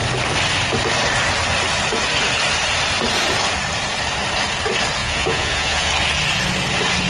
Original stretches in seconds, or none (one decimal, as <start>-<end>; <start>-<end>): 0.0-5.0; 5.9-7.1